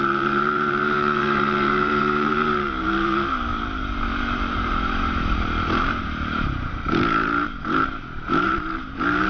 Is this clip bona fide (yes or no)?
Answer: no